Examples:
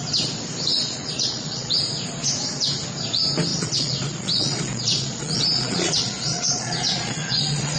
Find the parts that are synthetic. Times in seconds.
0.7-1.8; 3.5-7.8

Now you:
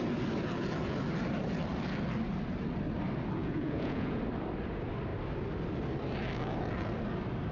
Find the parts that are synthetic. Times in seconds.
3.4-4.2